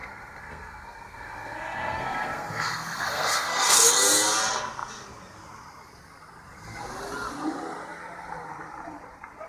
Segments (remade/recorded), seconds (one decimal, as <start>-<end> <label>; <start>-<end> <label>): 0.0-3.9 remade; 3.9-9.5 recorded